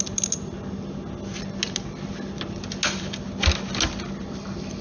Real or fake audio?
real